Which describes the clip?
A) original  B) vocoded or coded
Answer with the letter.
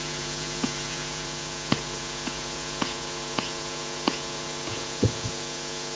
B